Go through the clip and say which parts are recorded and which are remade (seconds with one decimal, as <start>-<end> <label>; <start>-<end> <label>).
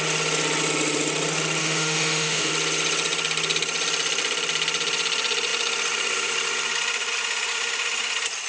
0.0-1.6 recorded; 1.6-2.5 remade; 2.5-8.5 recorded